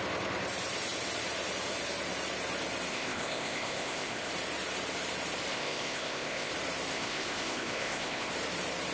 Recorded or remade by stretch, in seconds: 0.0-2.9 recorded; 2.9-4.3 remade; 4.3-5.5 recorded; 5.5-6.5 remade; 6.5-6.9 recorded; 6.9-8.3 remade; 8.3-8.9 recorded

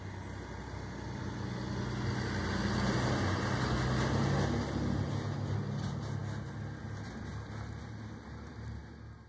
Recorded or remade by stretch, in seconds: 0.0-9.3 recorded

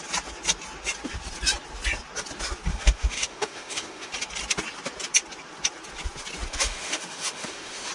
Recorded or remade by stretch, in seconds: 0.0-2.7 recorded; 2.7-4.1 remade; 4.1-6.5 recorded; 6.5-7.9 remade

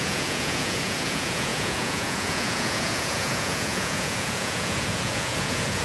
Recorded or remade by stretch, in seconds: 0.0-5.8 remade

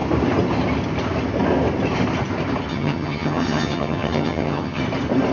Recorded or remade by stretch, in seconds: 0.0-2.7 recorded; 2.7-4.8 remade; 4.8-5.3 recorded